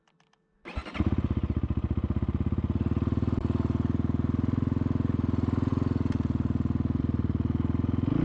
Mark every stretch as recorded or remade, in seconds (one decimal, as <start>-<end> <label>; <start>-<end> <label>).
0.0-8.2 recorded